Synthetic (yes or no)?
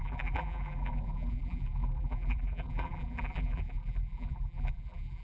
yes